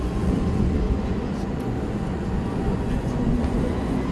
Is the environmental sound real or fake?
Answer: fake